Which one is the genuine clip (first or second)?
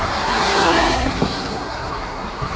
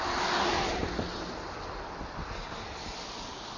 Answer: second